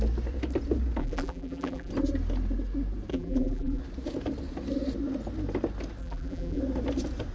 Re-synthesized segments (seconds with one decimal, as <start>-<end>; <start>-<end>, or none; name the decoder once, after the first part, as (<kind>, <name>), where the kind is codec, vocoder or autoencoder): 1.0-1.9 (vocoder, BigVGAN v2); 3.1-3.8; 6.0-6.6